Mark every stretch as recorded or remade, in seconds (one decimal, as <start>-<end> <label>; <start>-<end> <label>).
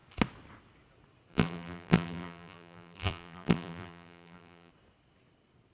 0.0-1.3 recorded; 1.3-4.7 remade; 4.7-5.7 recorded